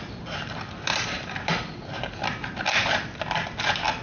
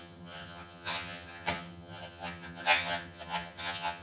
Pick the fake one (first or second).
second